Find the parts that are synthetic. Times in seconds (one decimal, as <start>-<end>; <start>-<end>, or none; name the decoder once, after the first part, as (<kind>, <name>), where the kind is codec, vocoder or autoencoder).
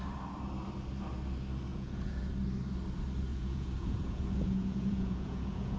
1.7-2.3 (vocoder, Vocos); 3.3-5.8